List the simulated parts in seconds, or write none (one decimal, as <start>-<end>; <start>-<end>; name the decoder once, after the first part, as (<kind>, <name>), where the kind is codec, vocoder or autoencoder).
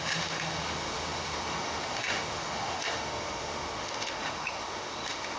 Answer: 0.0-5.4 (autoencoder, DAC-VAE)